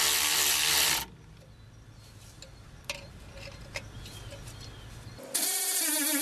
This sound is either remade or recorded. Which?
recorded